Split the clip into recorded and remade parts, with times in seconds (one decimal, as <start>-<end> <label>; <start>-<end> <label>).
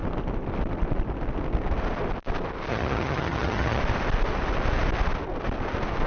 0.0-2.7 recorded; 2.7-3.8 remade; 3.8-6.1 recorded